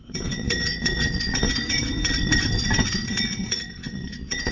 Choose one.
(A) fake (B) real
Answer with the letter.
A